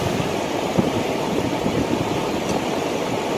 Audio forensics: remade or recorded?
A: remade